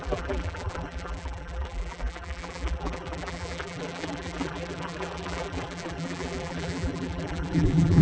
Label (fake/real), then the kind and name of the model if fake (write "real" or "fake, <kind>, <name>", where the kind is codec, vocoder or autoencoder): fake, vocoder, BigVGAN v2